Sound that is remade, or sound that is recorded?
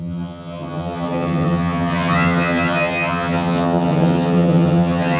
remade